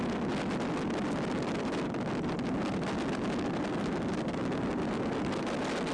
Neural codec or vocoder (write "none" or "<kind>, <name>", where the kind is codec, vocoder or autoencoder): none